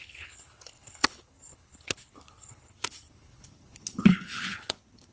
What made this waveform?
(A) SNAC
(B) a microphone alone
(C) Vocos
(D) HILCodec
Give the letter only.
D